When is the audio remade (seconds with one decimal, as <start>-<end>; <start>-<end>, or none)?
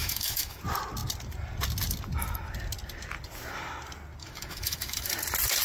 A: 0.0-0.6; 4.2-5.1